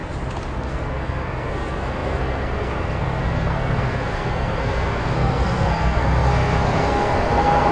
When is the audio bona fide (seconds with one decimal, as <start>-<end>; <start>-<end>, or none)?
0.0-0.6